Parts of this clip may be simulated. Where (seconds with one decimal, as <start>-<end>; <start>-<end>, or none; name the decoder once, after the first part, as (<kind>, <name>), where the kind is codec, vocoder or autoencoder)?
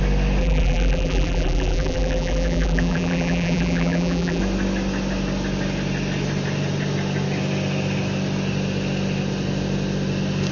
0.4-4.4 (vocoder, BigVGAN v2)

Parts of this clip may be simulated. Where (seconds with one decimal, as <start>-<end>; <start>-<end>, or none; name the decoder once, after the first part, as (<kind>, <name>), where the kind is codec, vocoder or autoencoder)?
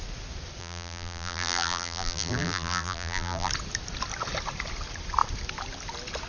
0.6-3.5 (vocoder, BigVGAN v2)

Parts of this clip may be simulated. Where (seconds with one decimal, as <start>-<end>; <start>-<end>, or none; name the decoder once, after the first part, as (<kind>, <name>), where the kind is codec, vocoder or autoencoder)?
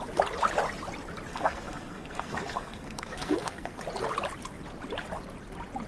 1.3-3.8 (codec, SNAC)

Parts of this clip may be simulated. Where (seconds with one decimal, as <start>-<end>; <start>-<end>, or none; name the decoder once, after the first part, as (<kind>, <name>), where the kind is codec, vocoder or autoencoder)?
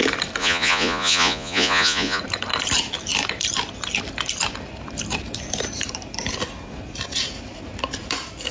0.4-2.2 (vocoder, Vocos)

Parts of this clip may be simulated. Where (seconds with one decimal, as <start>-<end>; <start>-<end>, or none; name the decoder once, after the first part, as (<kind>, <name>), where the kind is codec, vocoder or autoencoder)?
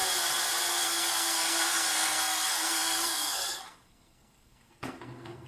0.8-5.5 (codec, SNAC)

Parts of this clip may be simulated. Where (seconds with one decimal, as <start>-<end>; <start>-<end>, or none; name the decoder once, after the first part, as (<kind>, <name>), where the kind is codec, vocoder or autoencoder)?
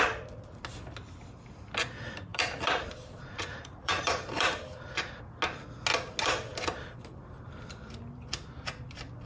2.3-5.2 (vocoder, BigVGAN v2)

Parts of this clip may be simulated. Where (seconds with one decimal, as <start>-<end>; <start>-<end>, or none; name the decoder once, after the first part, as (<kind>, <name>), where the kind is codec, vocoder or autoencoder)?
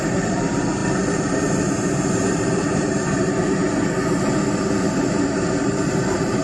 0.0-3.6 (vocoder, BigVGAN v2); 5.6-6.4